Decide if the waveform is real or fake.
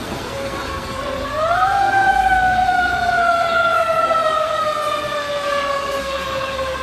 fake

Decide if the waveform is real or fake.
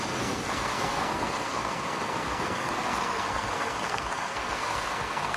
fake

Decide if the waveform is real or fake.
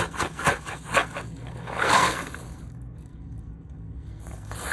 fake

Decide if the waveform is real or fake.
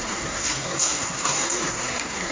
fake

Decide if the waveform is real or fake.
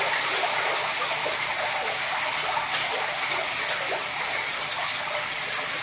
real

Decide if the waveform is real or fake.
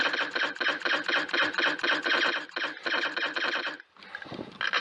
real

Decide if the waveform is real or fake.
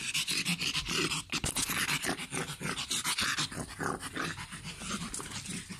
real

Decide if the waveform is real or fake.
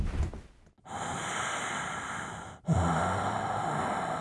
real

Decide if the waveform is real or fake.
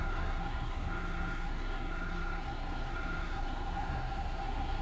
fake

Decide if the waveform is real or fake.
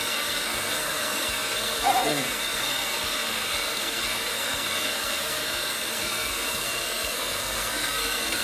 fake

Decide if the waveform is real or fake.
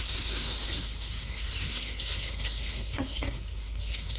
fake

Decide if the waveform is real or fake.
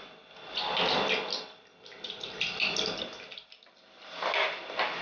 real